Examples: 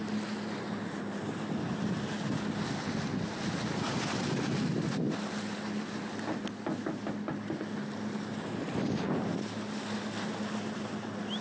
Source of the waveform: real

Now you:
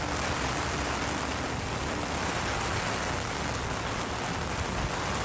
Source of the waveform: real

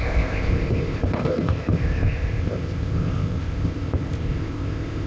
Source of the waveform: fake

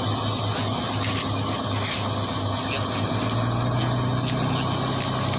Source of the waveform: real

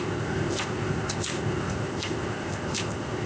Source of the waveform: fake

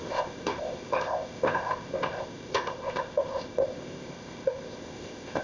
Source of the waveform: fake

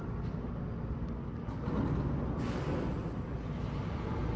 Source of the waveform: real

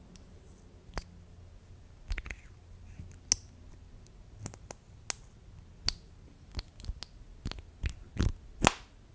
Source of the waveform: real